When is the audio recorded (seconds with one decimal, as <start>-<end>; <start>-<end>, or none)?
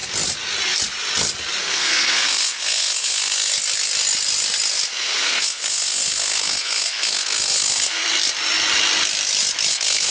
0.0-1.6; 3.5-4.9; 8.0-9.7